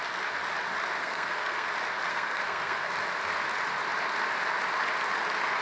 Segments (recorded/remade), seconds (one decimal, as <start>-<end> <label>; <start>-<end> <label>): 0.0-1.0 recorded; 1.0-1.7 remade; 1.7-2.1 recorded; 2.1-2.9 remade; 2.9-5.6 recorded